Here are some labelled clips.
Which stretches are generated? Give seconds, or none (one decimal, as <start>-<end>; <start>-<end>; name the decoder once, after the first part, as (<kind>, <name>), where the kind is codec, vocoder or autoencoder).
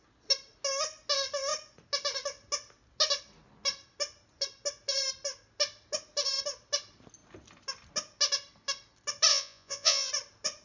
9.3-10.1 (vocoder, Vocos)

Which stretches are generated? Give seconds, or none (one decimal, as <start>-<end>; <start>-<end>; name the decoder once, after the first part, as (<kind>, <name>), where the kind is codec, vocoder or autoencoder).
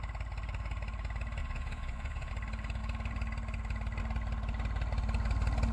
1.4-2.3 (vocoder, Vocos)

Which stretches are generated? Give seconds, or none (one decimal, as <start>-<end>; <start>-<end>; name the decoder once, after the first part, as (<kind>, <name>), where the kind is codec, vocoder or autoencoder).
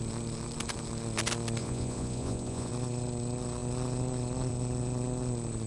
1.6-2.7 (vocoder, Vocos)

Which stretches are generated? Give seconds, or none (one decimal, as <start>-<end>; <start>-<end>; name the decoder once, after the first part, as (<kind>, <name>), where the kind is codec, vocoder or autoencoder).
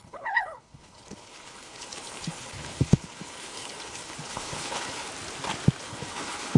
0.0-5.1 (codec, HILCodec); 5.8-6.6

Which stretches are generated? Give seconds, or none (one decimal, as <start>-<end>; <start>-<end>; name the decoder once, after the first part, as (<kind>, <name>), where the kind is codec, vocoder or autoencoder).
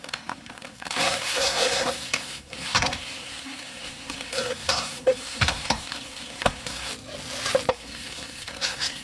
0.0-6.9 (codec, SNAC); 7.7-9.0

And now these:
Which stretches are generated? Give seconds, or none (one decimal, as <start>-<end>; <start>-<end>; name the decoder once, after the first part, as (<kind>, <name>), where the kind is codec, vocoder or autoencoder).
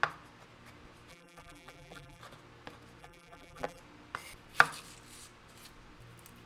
1.1-2.2 (vocoder, BigVGAN v2); 3.0-3.8